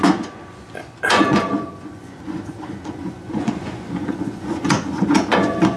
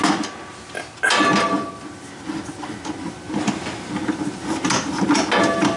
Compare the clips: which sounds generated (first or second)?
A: first